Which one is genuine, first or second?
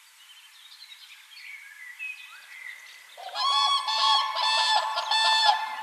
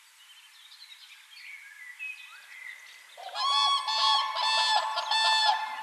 second